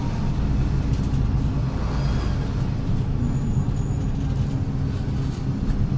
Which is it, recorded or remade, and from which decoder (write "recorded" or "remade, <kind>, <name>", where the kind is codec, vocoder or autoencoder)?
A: recorded